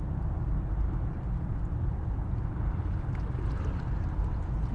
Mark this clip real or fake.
real